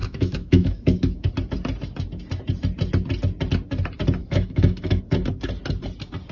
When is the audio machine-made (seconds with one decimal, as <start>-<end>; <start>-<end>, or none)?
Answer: 0.0-1.3; 4.2-5.0